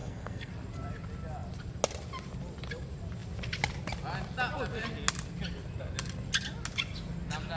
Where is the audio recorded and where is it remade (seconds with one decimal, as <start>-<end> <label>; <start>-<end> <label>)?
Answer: 0.0-0.5 remade; 0.5-7.6 recorded

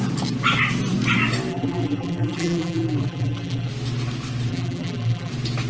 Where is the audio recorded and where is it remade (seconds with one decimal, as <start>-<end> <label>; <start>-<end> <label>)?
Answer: 0.0-1.5 recorded; 1.5-3.7 remade; 3.7-4.5 recorded; 4.5-5.3 remade; 5.3-5.7 recorded

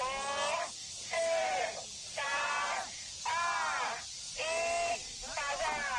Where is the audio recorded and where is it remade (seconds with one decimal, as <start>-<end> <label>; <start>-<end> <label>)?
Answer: 0.0-0.8 recorded; 0.8-1.6 remade; 1.6-6.0 recorded

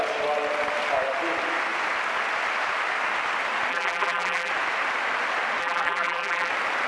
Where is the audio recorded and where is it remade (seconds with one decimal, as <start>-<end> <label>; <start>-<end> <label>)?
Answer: 0.0-3.7 recorded; 3.7-4.5 remade; 4.5-5.6 recorded; 5.6-6.5 remade; 6.5-6.9 recorded

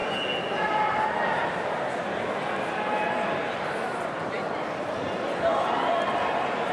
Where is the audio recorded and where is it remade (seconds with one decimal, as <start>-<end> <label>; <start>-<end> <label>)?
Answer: 0.0-6.7 recorded

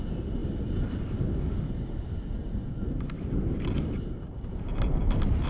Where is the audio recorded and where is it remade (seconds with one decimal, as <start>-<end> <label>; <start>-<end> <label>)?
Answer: 0.0-5.5 recorded

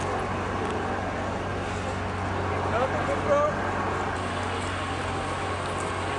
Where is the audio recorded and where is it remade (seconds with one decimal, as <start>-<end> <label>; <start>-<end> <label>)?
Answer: 0.0-6.2 recorded

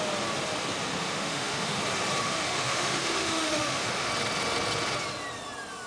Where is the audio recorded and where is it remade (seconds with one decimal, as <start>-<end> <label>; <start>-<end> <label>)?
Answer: 0.0-1.0 recorded; 1.0-1.8 remade; 1.8-2.2 recorded; 2.2-4.1 remade; 4.1-5.9 recorded